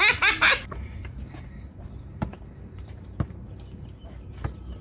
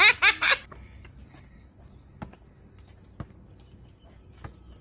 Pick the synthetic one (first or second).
first